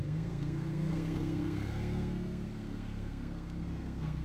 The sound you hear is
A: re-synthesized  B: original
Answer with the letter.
A